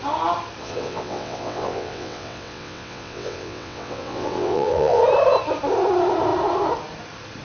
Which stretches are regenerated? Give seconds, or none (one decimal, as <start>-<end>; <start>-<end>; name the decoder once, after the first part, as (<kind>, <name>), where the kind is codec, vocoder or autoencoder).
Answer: 0.6-5.0 (vocoder, WaveNeXt)